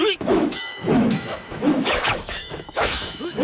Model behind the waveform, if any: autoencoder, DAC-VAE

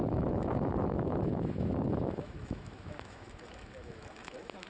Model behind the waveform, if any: autoencoder, DAC-VAE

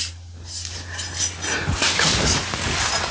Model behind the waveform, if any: none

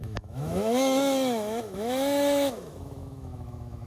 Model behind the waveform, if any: autoencoder, DAC-VAE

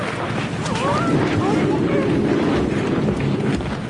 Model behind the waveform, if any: none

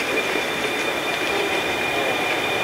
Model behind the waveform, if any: none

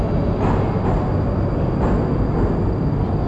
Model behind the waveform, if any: none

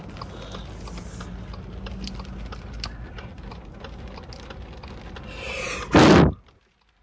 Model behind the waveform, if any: none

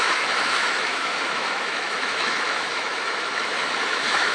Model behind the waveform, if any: autoencoder, DAC-VAE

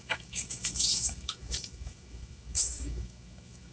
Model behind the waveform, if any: autoencoder, DAC-VAE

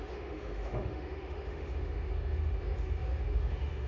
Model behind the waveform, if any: autoencoder, DAC-VAE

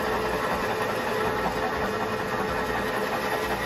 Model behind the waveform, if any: none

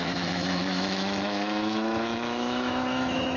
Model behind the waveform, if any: autoencoder, DAC-VAE